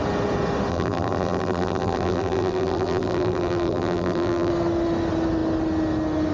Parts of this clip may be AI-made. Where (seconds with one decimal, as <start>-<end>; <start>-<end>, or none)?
0.7-4.5